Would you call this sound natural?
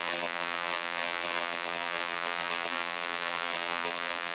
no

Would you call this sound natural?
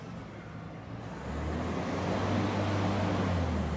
yes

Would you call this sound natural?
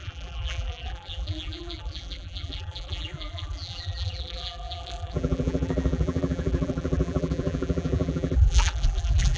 no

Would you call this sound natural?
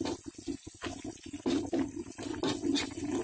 yes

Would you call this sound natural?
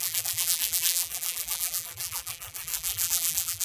no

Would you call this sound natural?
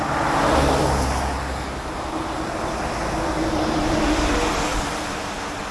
yes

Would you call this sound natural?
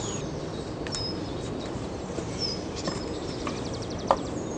no